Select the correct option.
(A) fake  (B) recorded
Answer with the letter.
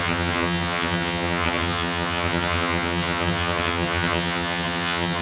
A